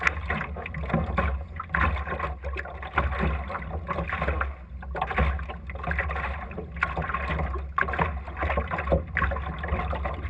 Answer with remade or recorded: recorded